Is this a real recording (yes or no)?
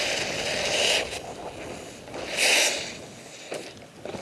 yes